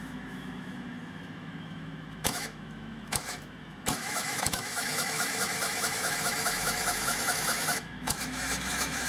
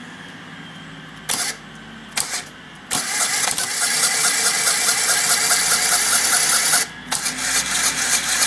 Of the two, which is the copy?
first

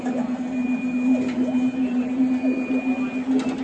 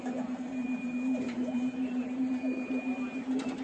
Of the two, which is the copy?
second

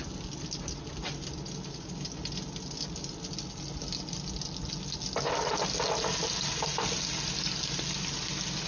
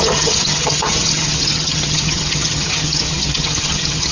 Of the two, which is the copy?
second